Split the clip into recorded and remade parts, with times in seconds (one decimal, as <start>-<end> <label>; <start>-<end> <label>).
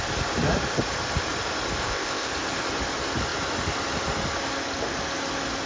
0.0-1.8 recorded; 1.8-2.3 remade; 2.3-5.7 recorded